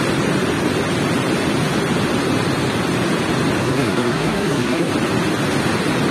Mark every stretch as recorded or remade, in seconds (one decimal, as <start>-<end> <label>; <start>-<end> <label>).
0.0-3.6 recorded; 3.6-4.9 remade; 4.9-6.1 recorded